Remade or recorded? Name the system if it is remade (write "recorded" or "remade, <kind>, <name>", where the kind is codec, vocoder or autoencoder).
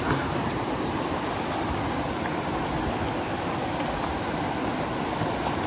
recorded